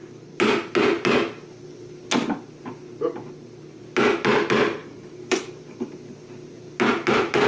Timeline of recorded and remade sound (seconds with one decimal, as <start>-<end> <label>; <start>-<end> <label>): 0.0-4.8 recorded; 4.8-5.6 remade; 5.6-7.5 recorded